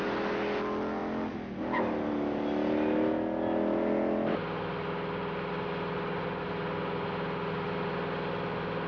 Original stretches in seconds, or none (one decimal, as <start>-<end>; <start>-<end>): 0.0-8.9